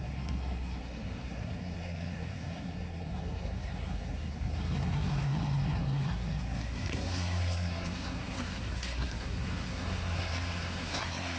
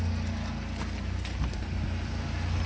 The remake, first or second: first